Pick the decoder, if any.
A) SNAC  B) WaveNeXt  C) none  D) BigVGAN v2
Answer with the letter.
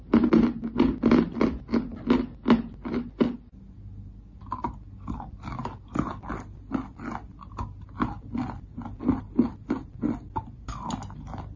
C